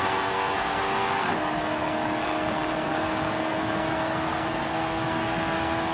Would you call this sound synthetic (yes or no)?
yes